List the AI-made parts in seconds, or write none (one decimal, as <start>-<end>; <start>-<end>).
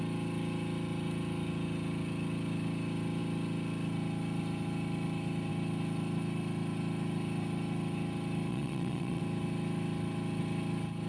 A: 8.5-9.2